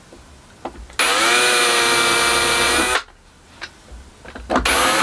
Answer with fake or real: real